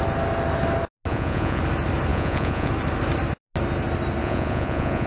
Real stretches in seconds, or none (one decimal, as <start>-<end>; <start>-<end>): 0.0-1.1; 1.6-2.1; 2.7-4.2